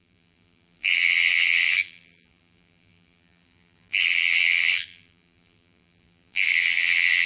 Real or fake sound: fake